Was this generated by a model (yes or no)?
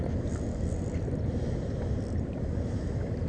no